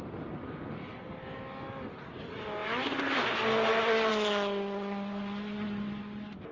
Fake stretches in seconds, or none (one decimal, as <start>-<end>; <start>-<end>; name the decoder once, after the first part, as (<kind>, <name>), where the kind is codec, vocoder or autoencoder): none

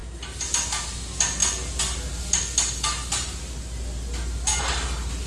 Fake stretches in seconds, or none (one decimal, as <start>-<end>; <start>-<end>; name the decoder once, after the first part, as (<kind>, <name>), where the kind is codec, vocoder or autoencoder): none

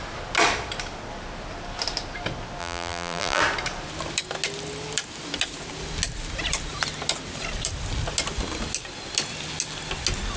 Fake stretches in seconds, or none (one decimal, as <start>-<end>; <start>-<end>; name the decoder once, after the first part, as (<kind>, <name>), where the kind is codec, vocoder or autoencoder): 2.6-3.4 (vocoder, BigVGAN v2)

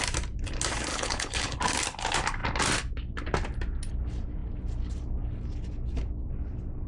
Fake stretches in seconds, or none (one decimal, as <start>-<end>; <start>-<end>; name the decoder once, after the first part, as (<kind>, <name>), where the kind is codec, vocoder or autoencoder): 0.9-1.6 (codec, HILCodec)

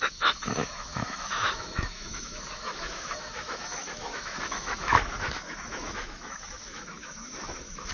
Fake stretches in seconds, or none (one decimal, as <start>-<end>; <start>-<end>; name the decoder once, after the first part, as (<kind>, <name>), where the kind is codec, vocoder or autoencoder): 0.0-7.9 (autoencoder, DAC-VAE)

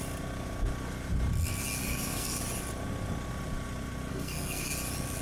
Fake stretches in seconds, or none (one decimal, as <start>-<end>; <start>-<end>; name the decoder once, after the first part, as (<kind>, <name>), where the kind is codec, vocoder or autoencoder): 1.8-2.4 (codec, SNAC); 4.1-4.7

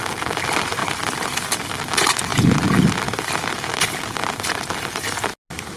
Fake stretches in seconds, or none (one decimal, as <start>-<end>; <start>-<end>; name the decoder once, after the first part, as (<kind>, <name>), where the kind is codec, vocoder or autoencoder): none